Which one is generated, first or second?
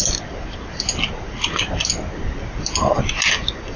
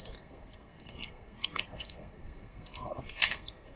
second